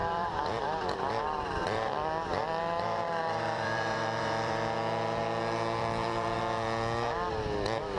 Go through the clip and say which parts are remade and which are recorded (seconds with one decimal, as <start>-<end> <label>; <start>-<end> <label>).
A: 0.0-1.1 remade; 1.1-1.6 recorded; 1.6-5.2 remade; 5.2-5.8 recorded; 5.8-6.4 remade; 6.4-8.0 recorded

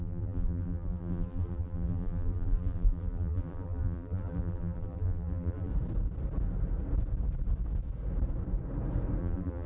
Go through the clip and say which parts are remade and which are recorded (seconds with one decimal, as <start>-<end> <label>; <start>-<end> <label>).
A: 0.0-5.7 remade; 5.7-9.2 recorded; 9.2-9.7 remade

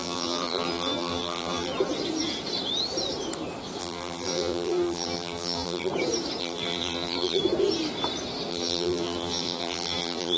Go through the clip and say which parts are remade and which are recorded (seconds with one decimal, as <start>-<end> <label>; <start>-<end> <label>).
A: 0.0-1.7 remade; 1.7-3.8 recorded; 3.8-5.9 remade; 5.9-6.4 recorded; 6.4-7.4 remade; 7.4-8.5 recorded; 8.5-10.4 remade